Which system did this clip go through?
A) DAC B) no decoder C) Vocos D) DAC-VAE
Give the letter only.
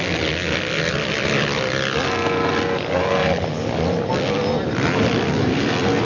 B